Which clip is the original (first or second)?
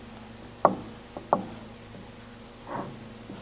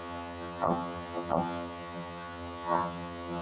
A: first